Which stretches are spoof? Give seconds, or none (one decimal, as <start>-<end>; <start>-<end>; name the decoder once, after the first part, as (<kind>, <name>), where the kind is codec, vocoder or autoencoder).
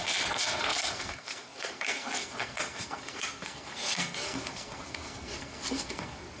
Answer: 0.0-6.4 (codec, SNAC)